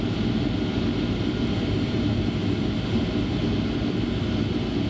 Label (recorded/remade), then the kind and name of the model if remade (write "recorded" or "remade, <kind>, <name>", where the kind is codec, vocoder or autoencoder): recorded